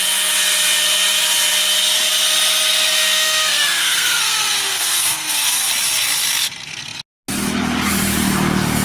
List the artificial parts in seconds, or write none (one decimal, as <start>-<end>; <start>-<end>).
2.9-5.7